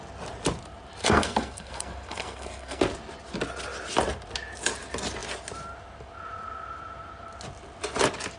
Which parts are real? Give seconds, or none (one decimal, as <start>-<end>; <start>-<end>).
0.0-1.0; 2.8-8.4